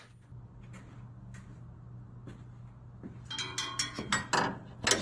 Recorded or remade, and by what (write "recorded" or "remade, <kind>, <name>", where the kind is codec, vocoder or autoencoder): recorded